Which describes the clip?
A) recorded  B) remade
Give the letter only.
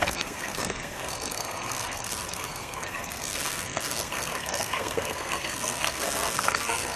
B